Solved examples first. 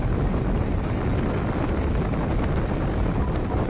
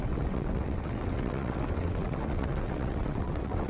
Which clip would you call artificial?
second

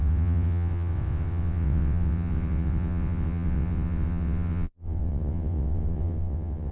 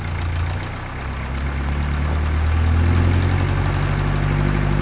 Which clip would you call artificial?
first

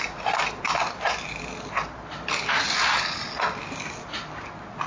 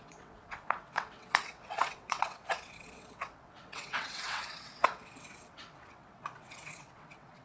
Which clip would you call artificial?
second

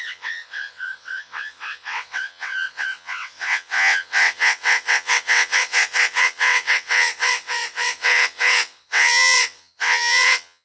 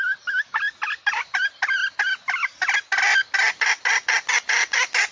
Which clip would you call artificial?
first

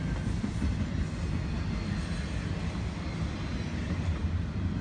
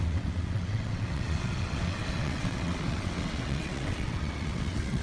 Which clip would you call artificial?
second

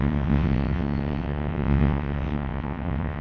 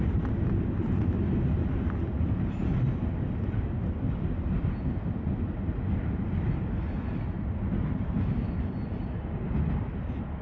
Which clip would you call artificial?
first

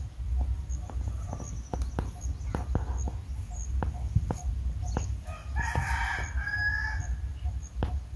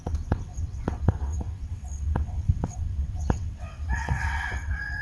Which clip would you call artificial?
second